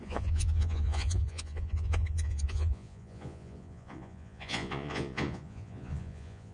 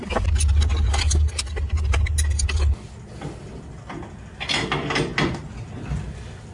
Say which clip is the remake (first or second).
first